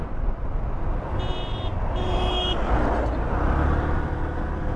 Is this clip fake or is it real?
real